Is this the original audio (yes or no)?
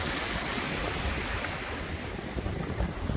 yes